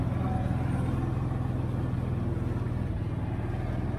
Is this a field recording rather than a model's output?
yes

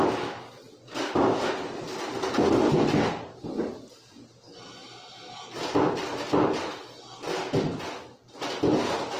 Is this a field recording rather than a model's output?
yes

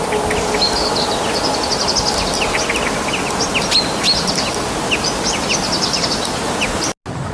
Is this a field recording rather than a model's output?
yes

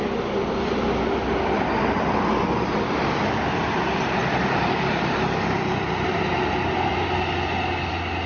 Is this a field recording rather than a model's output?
yes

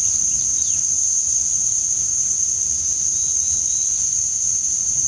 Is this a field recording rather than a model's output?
no